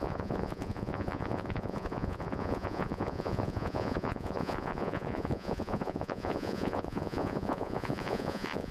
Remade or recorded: remade